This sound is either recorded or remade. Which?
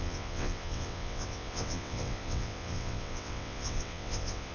remade